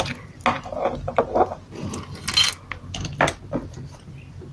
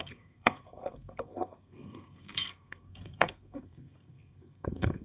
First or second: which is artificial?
second